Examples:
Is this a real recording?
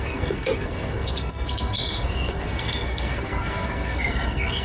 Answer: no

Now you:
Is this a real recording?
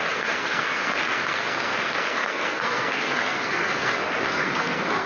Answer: no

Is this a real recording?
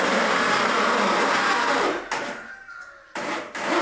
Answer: yes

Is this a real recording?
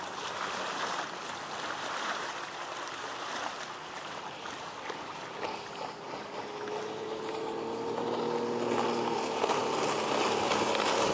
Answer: yes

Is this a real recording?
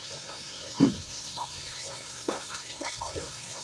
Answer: no